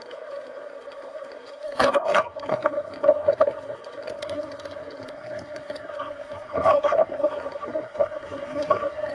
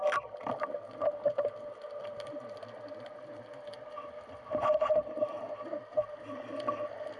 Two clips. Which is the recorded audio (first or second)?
second